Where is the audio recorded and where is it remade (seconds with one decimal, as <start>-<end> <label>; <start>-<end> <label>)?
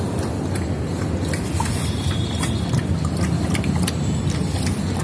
0.0-5.0 recorded